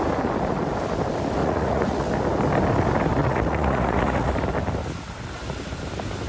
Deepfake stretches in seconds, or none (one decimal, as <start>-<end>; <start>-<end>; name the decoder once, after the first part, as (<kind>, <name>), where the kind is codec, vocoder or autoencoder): 1.4-2.1 (vocoder, Vocos); 3.2-4.3

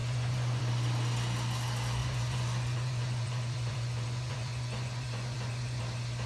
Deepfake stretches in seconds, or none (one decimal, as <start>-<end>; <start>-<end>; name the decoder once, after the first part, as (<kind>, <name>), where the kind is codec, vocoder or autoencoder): 0.0-0.6 (vocoder, Vocos); 2.0-5.8

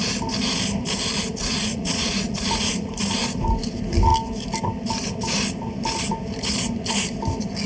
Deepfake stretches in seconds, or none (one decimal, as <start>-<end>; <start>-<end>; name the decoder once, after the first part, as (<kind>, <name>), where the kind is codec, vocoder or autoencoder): 1.4-2.9 (vocoder, Vocos)

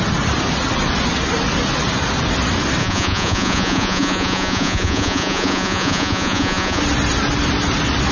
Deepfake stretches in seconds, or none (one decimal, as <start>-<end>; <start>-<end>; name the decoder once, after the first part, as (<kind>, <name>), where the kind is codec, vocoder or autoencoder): 2.8-6.8 (vocoder, Vocos)